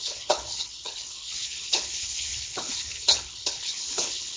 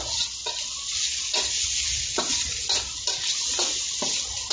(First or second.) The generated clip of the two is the first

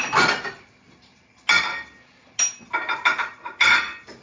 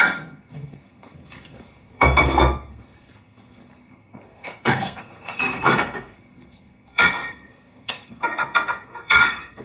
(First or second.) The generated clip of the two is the second